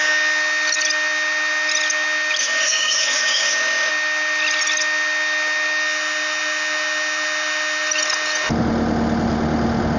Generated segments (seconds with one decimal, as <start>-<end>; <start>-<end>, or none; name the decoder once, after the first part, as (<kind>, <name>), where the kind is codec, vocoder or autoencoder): 2.4-3.9 (autoencoder, DAC-VAE)